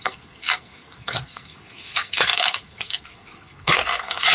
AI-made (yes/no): yes